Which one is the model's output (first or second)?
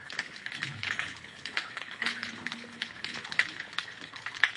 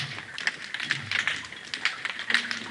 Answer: first